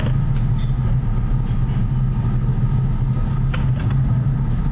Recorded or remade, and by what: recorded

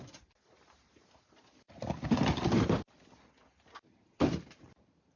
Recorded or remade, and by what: recorded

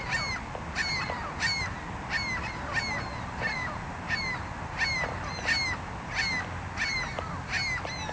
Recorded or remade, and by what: recorded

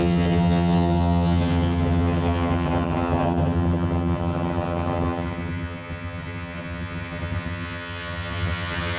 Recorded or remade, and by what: remade, vocoder, HiFi-GAN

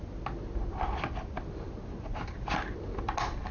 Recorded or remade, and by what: recorded